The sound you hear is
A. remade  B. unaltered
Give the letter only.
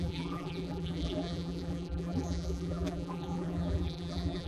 A